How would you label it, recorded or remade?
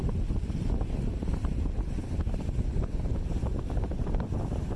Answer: recorded